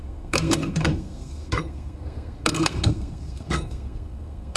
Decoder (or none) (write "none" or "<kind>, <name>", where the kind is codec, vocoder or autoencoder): codec, SNAC